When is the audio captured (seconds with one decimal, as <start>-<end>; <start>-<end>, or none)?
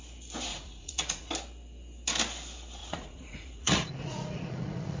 0.0-0.5; 1.3-2.8